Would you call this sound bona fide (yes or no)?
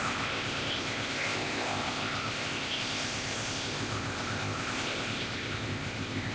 no